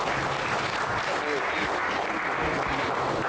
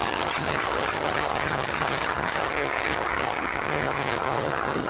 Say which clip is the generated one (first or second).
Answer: second